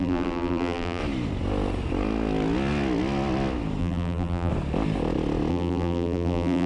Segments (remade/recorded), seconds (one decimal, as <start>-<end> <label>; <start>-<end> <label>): 0.0-1.0 remade; 1.0-3.8 recorded; 3.8-4.5 remade; 4.5-5.5 recorded; 5.5-6.7 remade